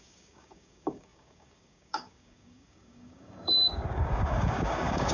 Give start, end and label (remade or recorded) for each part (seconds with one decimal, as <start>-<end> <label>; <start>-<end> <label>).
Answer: 0.0-5.1 remade